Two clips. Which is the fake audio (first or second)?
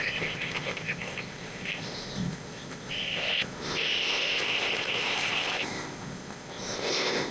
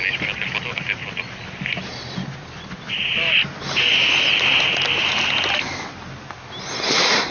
first